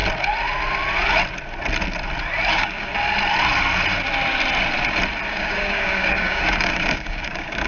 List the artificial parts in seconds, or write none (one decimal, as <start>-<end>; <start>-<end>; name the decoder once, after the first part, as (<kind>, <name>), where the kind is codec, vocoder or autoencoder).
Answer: 2.5-2.9 (codec, DAC); 5.3-7.7